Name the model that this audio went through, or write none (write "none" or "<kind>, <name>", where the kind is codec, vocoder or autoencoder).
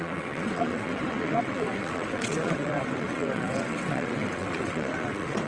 vocoder, WaveNeXt